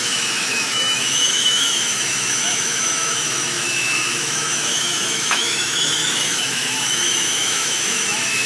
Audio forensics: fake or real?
fake